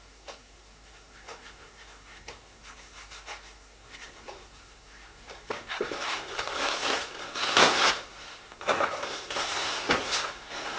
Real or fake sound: fake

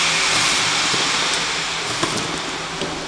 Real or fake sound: real